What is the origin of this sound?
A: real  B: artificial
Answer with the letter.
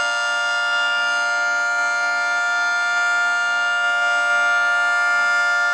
A